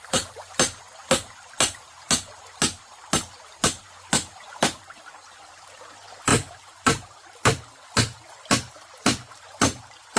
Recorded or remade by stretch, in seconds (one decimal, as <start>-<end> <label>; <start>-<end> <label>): 0.0-10.2 recorded